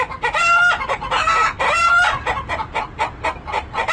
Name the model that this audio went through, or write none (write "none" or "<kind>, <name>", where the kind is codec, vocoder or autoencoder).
none